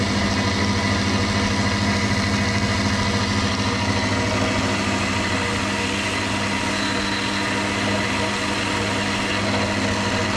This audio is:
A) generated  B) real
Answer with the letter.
B